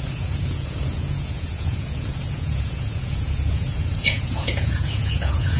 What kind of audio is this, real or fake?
fake